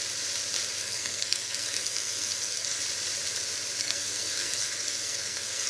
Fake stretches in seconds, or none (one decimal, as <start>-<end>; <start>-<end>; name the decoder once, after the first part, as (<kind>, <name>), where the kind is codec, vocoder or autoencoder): 0.8-2.8 (codec, SNAC); 3.8-5.7